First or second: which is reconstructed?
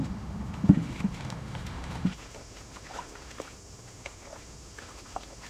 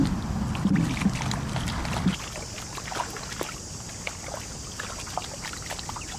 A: first